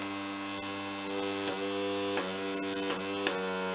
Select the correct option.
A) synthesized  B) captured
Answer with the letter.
B